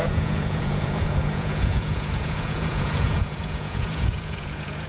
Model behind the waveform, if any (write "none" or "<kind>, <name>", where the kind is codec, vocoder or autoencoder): vocoder, Vocos